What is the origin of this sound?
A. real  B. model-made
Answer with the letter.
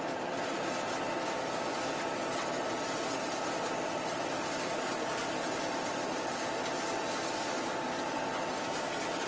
A